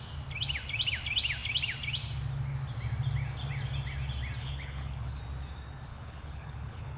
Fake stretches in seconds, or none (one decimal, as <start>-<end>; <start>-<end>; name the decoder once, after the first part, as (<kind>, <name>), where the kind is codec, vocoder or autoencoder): 4.4-5.2 (codec, HILCodec); 5.9-7.0